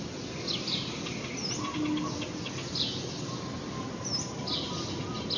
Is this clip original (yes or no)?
yes